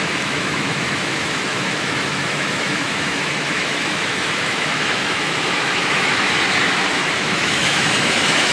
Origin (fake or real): fake